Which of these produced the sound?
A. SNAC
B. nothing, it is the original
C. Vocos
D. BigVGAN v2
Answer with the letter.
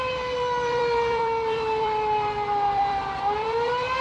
D